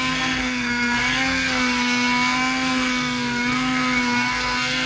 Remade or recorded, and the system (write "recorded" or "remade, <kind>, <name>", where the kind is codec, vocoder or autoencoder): remade, codec, SNAC